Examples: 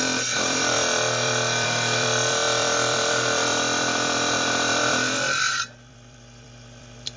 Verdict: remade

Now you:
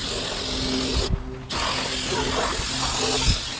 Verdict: recorded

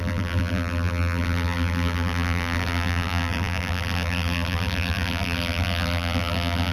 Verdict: remade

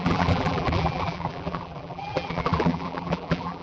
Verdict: remade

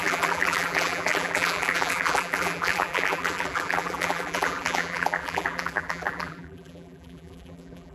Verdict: remade